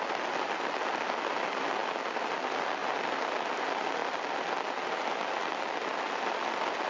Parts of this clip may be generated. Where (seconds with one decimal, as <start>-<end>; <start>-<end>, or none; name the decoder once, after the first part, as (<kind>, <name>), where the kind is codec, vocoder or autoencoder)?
none